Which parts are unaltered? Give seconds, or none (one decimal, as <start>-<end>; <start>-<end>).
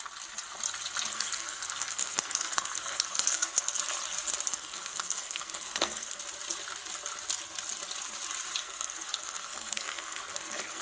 0.0-1.1; 3.8-4.5; 6.2-8.6